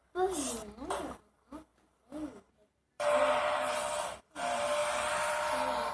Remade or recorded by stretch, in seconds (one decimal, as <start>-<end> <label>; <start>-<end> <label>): 0.0-4.8 remade; 4.8-5.9 recorded